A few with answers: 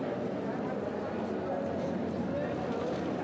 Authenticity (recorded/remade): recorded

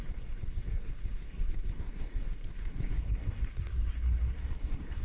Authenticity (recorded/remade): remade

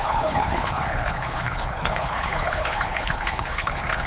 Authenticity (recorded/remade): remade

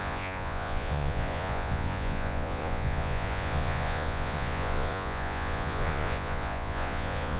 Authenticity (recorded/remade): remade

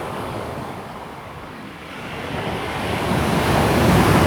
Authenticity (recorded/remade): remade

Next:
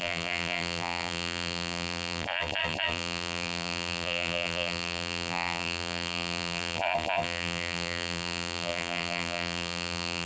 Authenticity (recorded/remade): remade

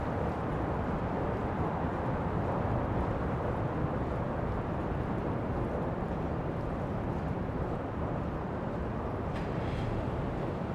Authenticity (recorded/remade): remade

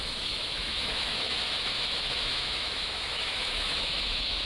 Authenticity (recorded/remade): remade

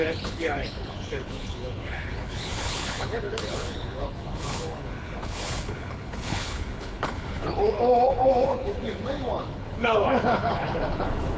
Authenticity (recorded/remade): remade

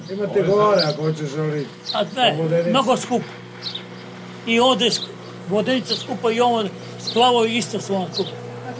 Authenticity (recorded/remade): recorded